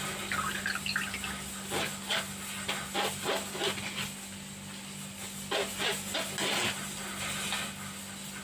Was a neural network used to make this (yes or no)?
no